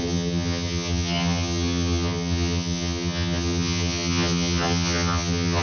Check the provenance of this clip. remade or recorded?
remade